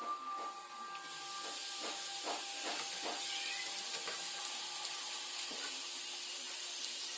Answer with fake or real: real